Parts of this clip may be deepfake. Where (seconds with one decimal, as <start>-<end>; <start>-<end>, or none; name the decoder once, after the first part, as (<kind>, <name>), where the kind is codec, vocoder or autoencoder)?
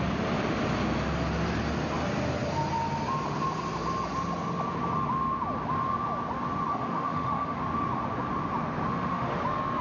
6.7-7.6 (autoencoder, DAC-VAE); 8.9-9.4